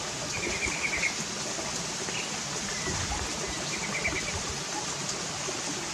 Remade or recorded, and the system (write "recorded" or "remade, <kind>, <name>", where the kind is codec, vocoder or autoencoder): recorded